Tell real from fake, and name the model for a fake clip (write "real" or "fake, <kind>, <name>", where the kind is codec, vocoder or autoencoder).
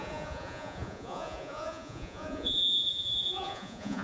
fake, vocoder, Vocos